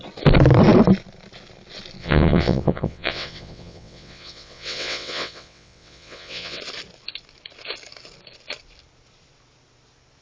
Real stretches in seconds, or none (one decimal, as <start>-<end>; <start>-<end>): 0.0-2.0; 6.6-10.2